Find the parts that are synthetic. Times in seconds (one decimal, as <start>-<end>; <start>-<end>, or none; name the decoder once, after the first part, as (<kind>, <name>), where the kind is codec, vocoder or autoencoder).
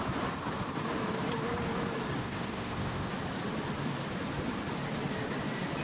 2.2-3.1 (codec, SNAC)